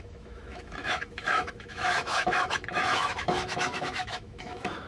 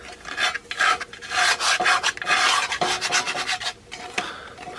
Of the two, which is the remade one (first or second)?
first